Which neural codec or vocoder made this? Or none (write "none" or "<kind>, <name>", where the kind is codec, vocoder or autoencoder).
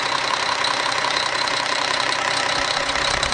vocoder, Vocos